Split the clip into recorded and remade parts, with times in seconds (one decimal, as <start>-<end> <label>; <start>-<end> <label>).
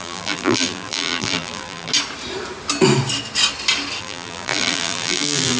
0.0-1.9 remade; 1.9-4.0 recorded; 4.0-5.6 remade